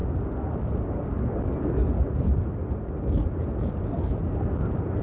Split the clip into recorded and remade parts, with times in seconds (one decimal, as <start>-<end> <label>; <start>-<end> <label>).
0.0-5.0 recorded